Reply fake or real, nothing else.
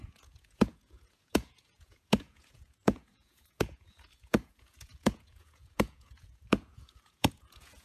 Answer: fake